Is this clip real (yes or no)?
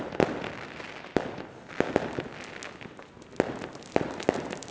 yes